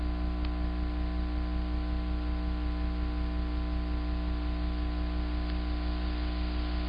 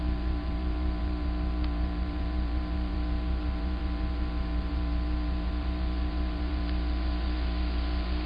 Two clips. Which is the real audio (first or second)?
first